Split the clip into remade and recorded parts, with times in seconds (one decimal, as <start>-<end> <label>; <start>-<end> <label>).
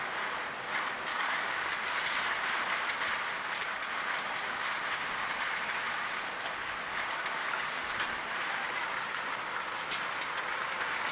0.0-1.1 recorded; 1.1-1.9 remade; 1.9-7.4 recorded; 7.4-7.9 remade; 7.9-11.1 recorded